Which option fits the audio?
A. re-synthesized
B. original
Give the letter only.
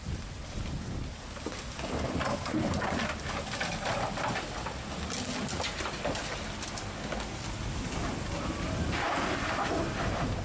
B